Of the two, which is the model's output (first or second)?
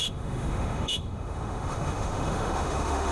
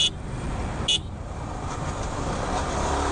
first